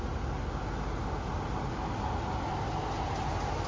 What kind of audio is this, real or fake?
real